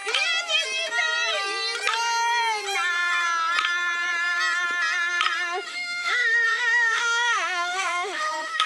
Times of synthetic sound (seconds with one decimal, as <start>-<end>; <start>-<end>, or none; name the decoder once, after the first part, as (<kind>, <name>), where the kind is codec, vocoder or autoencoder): 5.7-8.7 (autoencoder, DAC-VAE)